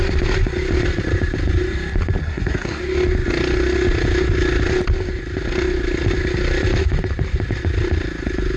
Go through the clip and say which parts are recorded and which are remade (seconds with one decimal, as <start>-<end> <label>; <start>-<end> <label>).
0.0-2.2 recorded; 2.2-2.8 remade; 2.8-8.6 recorded